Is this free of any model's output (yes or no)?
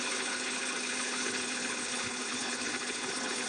no